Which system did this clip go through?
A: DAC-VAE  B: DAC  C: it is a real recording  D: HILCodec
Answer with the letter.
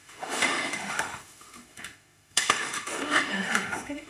A